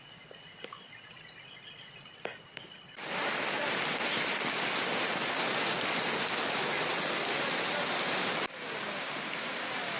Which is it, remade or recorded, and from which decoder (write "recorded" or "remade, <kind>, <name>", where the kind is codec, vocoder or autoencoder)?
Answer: recorded